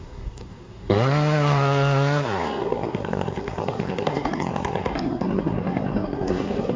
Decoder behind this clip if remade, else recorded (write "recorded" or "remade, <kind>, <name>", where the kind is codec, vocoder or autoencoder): remade, codec, SNAC